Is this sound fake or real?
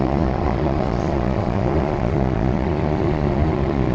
fake